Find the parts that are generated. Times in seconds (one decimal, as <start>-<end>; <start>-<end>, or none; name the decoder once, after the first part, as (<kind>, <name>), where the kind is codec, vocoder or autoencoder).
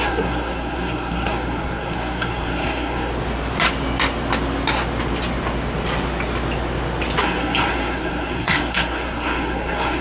0.0-3.1 (codec, SNAC); 7.2-10.0